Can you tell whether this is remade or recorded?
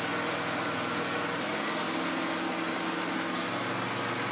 recorded